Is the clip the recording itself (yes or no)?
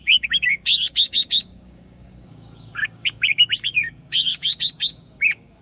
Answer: no